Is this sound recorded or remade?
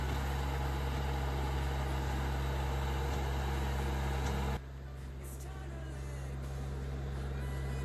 recorded